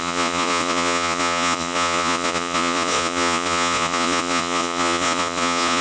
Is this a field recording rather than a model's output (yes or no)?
no